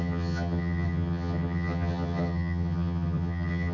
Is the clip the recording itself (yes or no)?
no